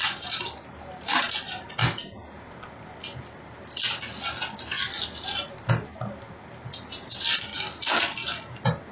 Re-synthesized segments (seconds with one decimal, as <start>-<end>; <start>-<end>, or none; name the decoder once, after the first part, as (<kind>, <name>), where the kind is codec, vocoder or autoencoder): none